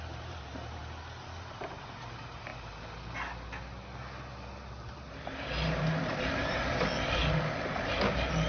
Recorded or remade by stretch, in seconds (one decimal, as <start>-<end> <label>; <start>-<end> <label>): 0.0-0.8 remade; 0.8-1.5 recorded; 1.5-2.5 remade; 2.5-4.7 recorded; 4.7-8.5 remade